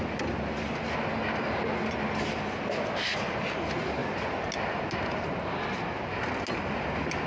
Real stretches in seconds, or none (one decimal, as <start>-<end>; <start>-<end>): 0.0-7.3